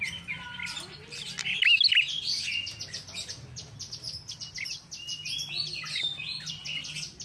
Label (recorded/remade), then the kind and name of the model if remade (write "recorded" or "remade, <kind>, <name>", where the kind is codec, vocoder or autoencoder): recorded